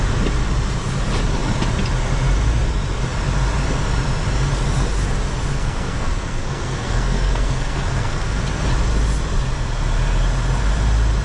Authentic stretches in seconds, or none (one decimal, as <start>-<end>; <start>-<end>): 0.0-5.5; 8.4-11.2